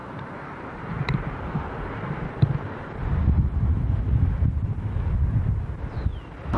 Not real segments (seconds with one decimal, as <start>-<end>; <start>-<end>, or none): 0.0-4.0